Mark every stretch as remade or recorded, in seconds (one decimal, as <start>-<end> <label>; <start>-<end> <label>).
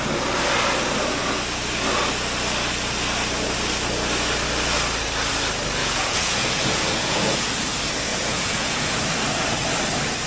0.0-5.8 recorded; 5.8-7.6 remade; 7.6-8.1 recorded; 8.1-9.0 remade; 9.0-10.3 recorded